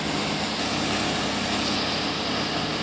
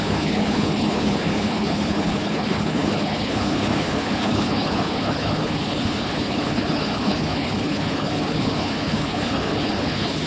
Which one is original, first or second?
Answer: first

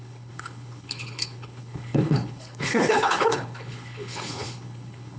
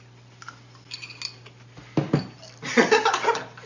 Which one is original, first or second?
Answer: second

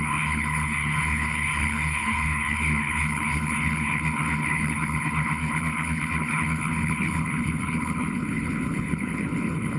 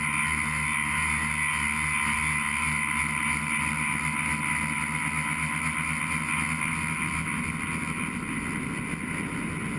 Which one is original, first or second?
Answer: second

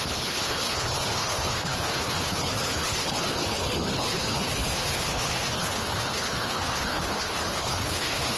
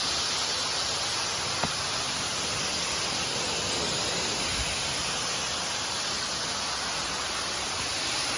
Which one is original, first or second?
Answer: second